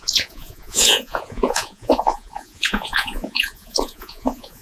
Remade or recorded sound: remade